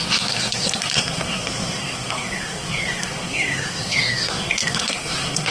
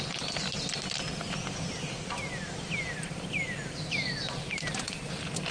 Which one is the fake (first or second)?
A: first